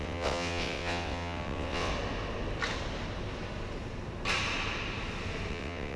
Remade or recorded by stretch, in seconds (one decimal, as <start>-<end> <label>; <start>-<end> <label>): 0.0-1.9 remade; 1.9-5.5 recorded; 5.5-6.0 remade